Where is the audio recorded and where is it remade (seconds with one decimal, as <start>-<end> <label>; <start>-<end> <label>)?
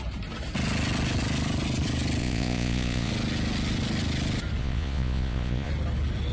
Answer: 0.0-2.2 recorded; 2.2-3.1 remade; 3.1-4.6 recorded; 4.6-5.7 remade; 5.7-6.3 recorded